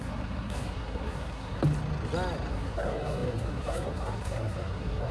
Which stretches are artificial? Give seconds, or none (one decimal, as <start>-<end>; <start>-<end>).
0.0-1.6; 2.5-5.1